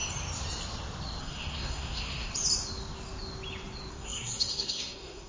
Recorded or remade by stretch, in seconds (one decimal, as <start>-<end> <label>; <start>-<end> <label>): 0.0-1.2 recorded; 1.2-2.3 remade; 2.3-3.9 recorded; 3.9-5.3 remade